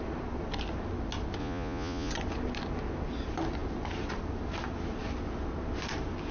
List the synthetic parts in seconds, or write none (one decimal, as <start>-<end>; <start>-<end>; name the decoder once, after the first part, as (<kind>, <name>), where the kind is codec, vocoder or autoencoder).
1.4-2.1 (vocoder, Vocos)